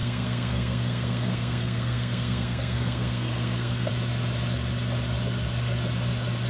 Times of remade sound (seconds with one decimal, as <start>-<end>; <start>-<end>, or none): 0.0-3.9